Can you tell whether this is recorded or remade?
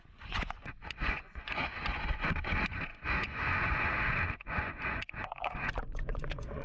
remade